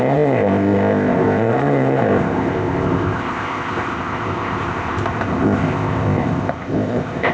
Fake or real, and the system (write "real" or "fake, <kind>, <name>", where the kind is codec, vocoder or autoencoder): fake, codec, ZipCodec